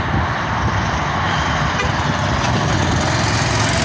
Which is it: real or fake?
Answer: real